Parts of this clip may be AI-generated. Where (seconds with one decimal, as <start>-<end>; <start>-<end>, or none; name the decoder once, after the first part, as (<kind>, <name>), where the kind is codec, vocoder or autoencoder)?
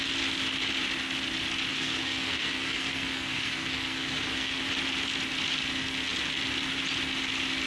1.7-4.6 (codec, SNAC)